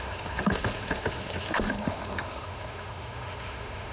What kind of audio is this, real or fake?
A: fake